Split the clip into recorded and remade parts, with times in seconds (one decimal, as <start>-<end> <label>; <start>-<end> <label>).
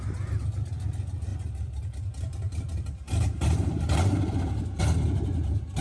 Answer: 0.0-1.3 recorded; 1.3-4.8 remade; 4.8-5.8 recorded